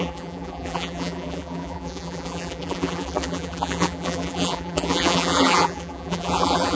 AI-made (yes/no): yes